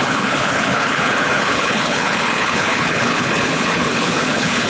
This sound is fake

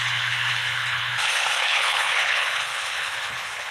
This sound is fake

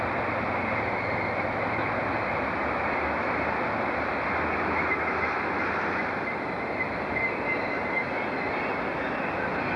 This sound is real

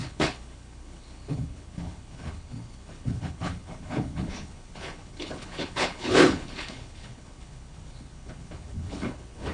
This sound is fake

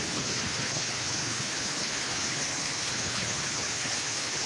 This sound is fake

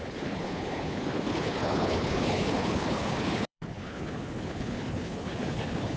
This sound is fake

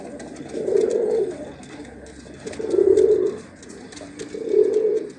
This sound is real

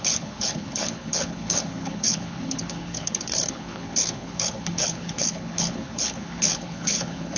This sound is fake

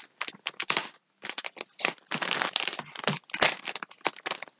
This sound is real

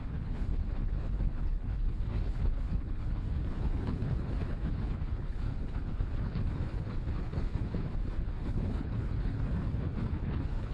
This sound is fake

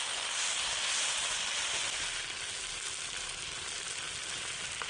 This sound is real